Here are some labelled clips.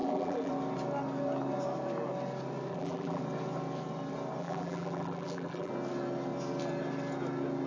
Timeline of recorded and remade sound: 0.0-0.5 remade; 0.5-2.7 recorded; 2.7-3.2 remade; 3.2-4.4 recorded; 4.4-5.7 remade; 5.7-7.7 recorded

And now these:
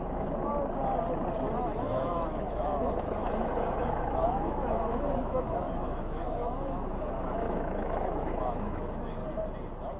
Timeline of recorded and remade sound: 0.0-0.5 remade; 0.5-1.6 recorded; 1.6-9.2 remade; 9.2-10.0 recorded